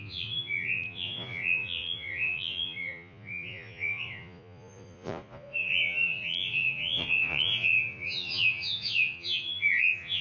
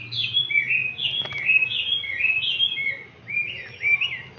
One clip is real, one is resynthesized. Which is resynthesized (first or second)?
first